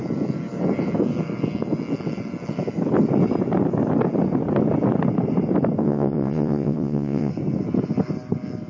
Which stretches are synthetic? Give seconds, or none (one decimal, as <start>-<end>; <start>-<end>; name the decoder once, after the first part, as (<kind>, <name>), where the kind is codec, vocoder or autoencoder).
5.8-7.3 (vocoder, WaveNeXt)